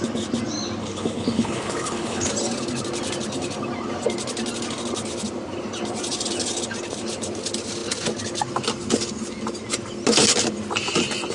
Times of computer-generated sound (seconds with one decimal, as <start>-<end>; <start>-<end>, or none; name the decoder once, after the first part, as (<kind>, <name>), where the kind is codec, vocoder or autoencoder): 0.8-2.3 (codec, HILCodec)